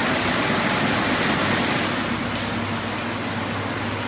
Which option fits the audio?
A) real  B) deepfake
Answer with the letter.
A